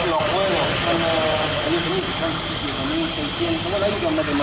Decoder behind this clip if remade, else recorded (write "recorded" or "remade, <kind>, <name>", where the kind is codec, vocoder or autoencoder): recorded